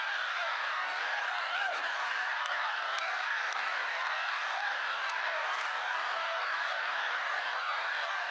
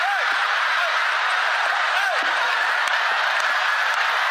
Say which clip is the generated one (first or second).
first